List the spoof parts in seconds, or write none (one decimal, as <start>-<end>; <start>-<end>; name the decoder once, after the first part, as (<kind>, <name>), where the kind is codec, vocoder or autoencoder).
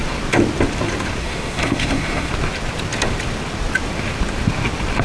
1.2-2.3 (codec, SNAC)